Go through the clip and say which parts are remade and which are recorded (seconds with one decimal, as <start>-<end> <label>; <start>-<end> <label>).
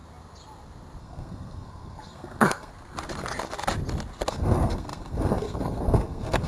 0.0-1.0 recorded; 1.0-2.7 remade; 2.7-4.3 recorded; 4.3-6.5 remade